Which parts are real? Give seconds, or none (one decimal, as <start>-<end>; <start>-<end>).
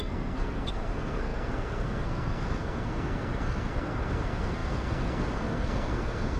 none